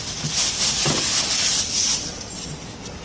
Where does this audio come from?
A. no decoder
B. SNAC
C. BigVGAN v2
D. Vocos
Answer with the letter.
A